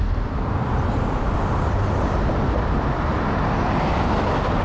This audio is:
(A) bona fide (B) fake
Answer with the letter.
A